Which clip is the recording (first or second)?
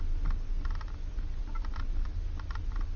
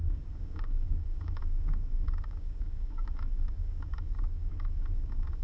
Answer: first